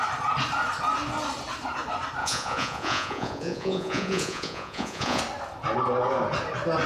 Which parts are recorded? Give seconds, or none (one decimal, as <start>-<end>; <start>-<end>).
0.0-2.2; 5.2-6.9